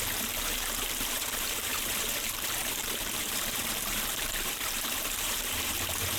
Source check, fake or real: fake